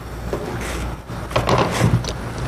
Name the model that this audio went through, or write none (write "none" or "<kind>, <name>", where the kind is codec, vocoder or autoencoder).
none